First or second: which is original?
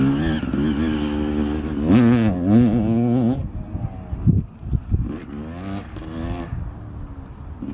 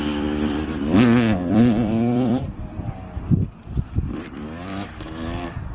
first